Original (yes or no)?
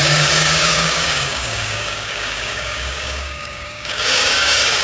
no